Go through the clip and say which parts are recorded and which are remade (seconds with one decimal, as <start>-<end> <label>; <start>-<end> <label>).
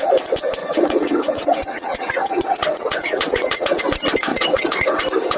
0.0-0.6 recorded; 0.6-3.8 remade; 3.8-4.3 recorded; 4.3-5.0 remade; 5.0-5.4 recorded